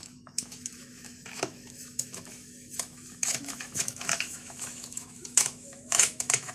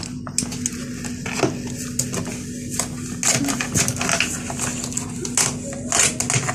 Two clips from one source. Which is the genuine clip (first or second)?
second